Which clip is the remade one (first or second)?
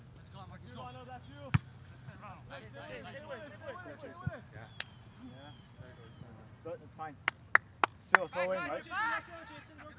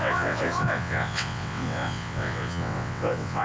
second